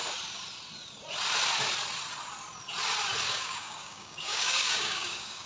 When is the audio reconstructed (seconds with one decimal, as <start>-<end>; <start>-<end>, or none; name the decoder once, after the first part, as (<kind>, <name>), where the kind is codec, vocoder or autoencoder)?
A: 3.3-5.5 (codec, DAC)

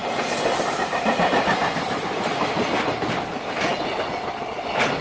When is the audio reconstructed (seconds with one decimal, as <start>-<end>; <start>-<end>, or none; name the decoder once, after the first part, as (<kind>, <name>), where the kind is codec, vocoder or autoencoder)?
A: none